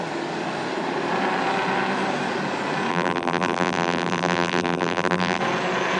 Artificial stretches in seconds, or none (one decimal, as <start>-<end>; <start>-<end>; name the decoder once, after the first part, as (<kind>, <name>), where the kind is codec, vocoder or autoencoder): 2.9-5.4 (vocoder, BigVGAN v2)